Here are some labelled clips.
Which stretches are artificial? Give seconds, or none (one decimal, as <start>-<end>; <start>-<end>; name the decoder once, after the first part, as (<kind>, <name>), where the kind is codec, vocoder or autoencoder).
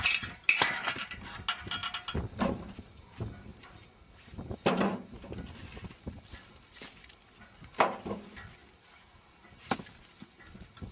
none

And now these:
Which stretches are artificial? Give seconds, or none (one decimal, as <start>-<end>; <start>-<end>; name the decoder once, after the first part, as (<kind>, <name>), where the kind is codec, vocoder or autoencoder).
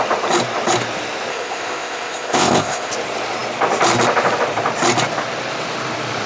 1.3-2.9 (codec, ZipCodec)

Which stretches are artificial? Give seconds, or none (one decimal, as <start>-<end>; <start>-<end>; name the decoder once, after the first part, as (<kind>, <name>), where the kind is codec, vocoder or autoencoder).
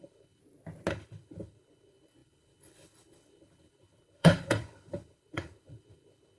0.0-0.4 (codec, HILCodec); 0.9-6.4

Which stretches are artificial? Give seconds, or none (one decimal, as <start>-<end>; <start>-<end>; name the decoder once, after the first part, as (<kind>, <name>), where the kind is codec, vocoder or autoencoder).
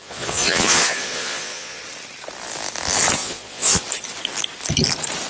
0.0-1.8 (vocoder, Vocos); 3.2-3.8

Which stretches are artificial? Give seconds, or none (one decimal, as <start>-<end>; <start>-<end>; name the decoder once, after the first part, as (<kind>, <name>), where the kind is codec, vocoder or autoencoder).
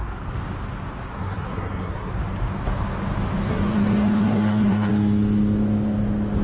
1.1-2.1 (codec, SNAC); 3.5-4.9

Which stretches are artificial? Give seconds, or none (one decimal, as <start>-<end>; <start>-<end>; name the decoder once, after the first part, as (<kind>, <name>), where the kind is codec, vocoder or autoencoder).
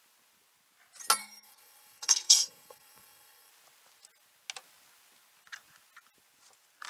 1.2-3.5 (codec, SNAC)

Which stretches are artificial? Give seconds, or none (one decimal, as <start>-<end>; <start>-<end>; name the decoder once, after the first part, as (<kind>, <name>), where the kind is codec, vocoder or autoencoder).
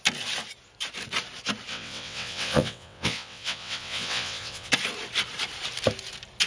1.7-4.7 (vocoder, WaveNeXt)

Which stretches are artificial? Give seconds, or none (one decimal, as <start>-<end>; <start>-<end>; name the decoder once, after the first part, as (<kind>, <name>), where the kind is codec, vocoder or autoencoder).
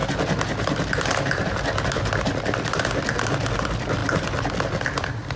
none